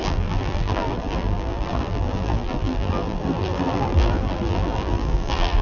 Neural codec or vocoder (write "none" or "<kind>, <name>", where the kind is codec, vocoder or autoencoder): vocoder, BigVGAN v2